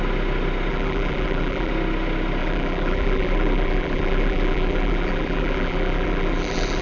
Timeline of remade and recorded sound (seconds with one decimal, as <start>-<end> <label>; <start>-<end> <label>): 0.0-0.7 recorded; 0.7-1.7 remade; 1.7-2.4 recorded; 2.4-6.8 remade